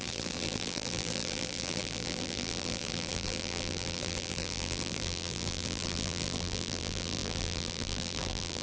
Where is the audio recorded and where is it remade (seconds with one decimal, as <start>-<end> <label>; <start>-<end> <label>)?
0.0-8.6 remade